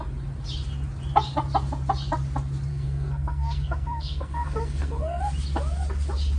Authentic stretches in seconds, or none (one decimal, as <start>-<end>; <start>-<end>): 0.0-2.7; 5.3-6.4